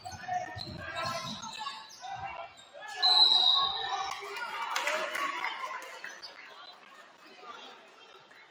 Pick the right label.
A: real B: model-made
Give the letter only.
A